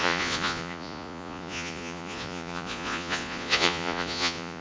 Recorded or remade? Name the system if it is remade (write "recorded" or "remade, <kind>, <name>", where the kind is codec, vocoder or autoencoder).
remade, vocoder, Vocos